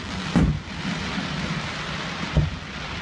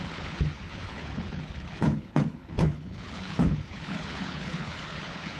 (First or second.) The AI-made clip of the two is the second